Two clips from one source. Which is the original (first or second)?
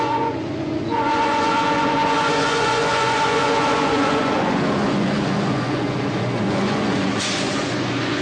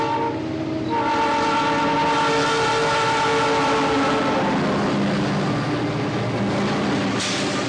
second